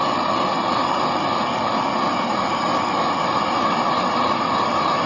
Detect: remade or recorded recorded